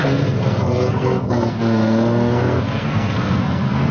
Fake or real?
fake